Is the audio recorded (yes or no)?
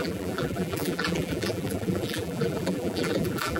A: no